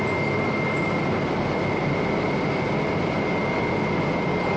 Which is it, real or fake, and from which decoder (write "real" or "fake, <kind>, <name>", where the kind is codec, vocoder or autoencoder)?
real